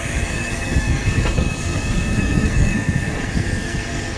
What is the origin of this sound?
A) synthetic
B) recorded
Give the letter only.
A